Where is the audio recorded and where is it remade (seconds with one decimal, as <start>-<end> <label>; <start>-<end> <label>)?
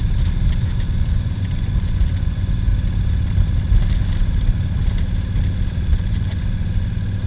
0.0-0.6 recorded; 0.6-2.7 remade; 2.7-5.9 recorded; 5.9-7.3 remade